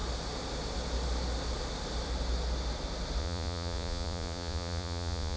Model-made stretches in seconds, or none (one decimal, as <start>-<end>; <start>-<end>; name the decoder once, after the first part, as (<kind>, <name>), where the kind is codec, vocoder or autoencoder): 3.2-5.4 (vocoder, Vocos)